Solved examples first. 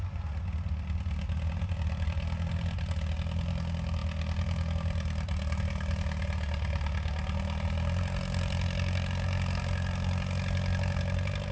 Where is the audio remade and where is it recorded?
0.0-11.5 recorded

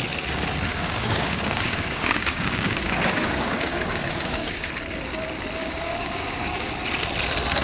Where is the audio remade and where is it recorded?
0.0-0.7 recorded; 0.7-4.7 remade; 4.7-5.6 recorded; 5.6-6.7 remade; 6.7-7.6 recorded